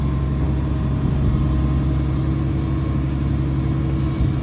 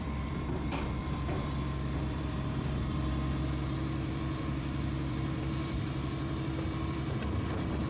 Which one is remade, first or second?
second